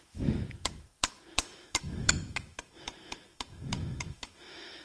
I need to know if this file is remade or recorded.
remade